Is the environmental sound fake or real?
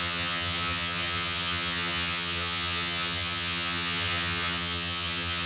fake